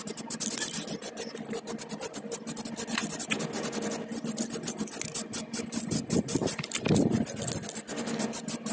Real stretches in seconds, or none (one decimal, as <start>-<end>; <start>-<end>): 0.0-8.7